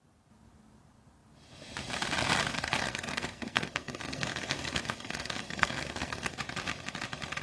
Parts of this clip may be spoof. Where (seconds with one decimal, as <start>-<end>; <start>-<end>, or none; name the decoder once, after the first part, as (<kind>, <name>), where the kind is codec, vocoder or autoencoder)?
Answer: 2.5-6.4 (codec, SNAC)